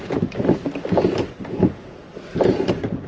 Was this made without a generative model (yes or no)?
yes